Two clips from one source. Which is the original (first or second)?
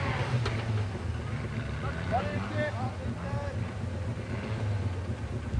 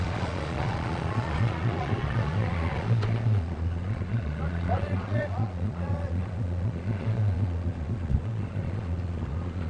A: first